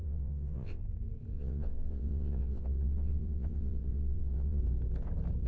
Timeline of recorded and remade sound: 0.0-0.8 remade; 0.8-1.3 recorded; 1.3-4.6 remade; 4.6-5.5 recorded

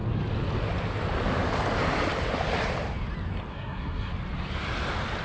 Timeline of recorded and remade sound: 0.0-3.5 recorded; 3.5-4.1 remade; 4.1-5.2 recorded

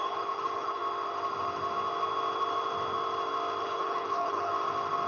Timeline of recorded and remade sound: 0.0-0.8 remade; 0.8-3.6 recorded; 3.6-4.5 remade; 4.5-5.1 recorded

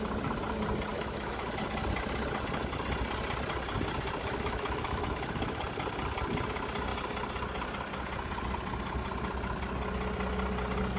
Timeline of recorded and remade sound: 0.0-0.9 recorded; 0.9-1.5 remade; 1.5-4.2 recorded; 4.2-5.6 remade; 5.6-11.0 recorded